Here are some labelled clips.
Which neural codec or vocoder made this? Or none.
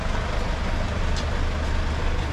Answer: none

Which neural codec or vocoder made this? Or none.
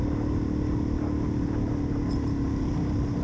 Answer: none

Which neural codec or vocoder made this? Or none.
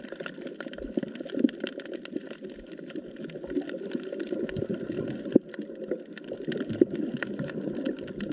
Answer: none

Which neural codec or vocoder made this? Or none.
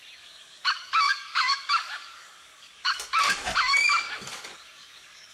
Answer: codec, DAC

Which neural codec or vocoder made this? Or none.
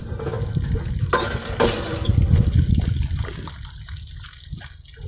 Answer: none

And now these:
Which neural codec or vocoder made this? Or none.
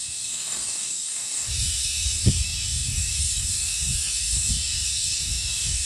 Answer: codec, DAC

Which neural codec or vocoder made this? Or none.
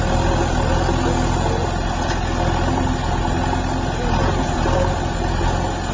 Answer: none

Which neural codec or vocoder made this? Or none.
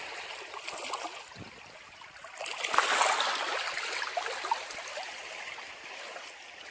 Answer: none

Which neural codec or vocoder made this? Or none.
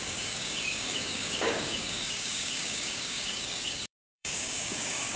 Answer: codec, DAC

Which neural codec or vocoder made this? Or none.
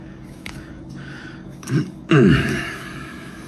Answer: codec, DAC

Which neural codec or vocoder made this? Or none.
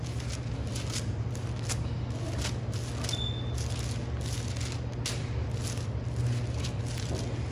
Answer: none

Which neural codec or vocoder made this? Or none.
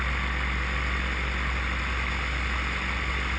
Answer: none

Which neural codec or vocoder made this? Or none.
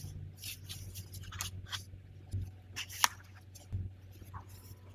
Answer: none